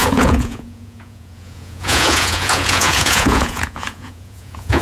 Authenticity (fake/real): fake